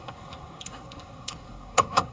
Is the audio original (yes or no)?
no